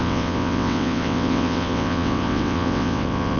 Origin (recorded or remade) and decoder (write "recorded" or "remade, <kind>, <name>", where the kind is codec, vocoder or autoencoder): remade, vocoder, WaveNeXt